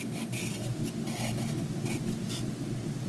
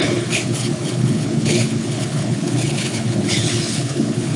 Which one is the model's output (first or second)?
second